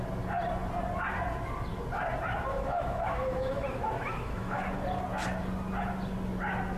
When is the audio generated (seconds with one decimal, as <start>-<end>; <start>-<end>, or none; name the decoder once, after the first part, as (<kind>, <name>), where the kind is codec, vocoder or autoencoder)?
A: 2.5-4.6 (autoencoder, DAC-VAE)